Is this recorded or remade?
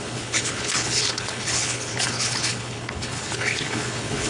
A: remade